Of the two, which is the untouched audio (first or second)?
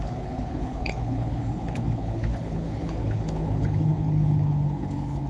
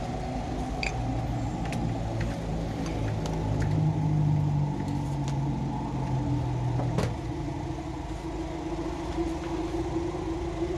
second